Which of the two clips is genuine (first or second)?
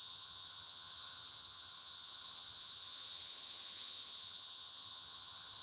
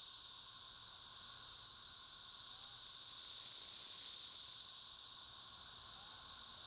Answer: second